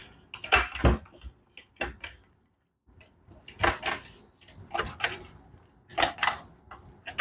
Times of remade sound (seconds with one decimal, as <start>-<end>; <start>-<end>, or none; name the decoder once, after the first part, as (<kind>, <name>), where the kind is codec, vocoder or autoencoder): none